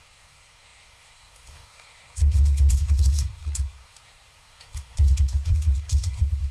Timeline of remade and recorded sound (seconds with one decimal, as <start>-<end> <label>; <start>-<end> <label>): 0.0-6.5 remade